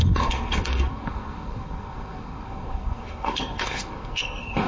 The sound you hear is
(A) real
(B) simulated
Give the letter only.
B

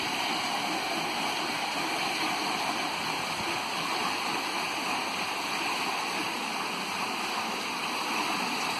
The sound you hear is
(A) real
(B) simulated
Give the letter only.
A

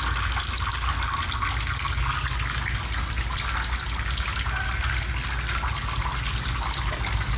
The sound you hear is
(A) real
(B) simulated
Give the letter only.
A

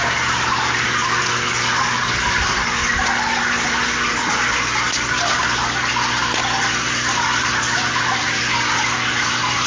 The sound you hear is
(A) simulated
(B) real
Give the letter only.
B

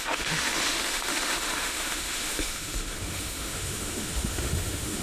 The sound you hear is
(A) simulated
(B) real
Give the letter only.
A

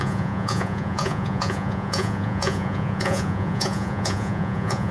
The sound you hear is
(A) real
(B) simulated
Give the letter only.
B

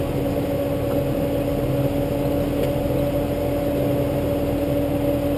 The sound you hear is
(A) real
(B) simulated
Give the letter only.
A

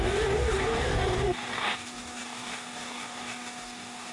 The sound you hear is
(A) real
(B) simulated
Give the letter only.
B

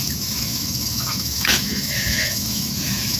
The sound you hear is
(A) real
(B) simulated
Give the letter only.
B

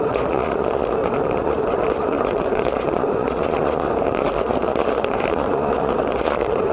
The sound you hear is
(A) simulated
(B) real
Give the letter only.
A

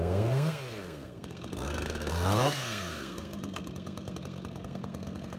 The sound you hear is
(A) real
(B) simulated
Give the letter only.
B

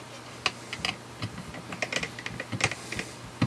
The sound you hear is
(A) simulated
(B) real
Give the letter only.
B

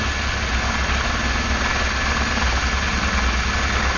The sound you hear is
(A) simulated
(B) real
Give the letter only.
B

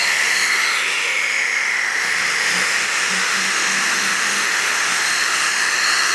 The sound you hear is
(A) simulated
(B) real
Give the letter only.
A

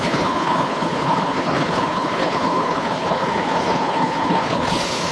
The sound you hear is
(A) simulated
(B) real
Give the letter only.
A